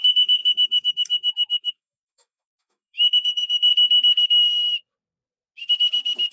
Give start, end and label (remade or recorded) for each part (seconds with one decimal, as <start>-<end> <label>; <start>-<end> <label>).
0.0-3.7 remade; 3.7-6.3 recorded